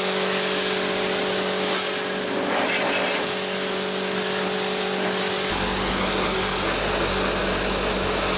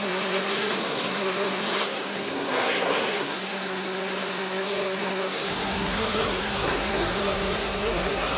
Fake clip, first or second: second